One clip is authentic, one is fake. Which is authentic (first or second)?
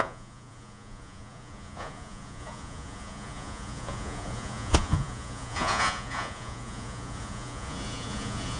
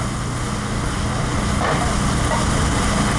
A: second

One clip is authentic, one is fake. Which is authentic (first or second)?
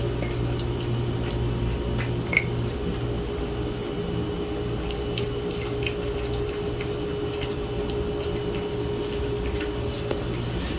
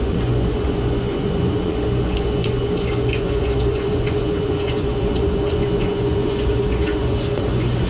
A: first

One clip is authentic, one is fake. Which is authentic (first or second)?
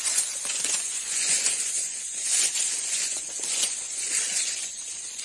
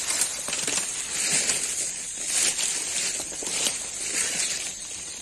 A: second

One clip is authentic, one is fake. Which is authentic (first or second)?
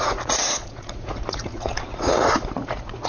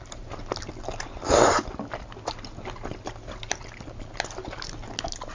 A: second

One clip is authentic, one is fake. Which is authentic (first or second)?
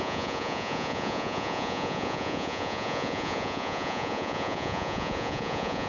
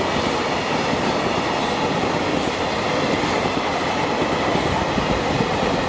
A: second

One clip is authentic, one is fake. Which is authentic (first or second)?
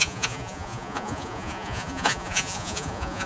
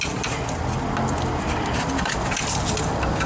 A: second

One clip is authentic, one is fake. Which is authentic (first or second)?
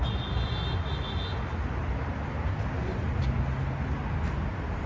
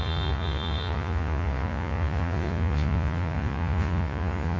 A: first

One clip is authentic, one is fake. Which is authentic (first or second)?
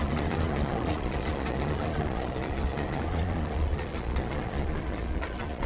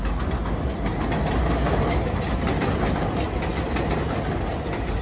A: second